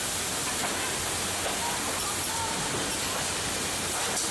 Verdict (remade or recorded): recorded